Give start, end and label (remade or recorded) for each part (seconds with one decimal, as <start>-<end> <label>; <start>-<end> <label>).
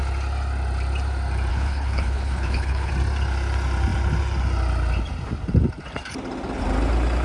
0.0-1.5 recorded; 1.5-2.9 remade; 2.9-7.2 recorded